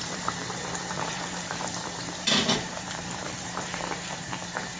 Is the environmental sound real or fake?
fake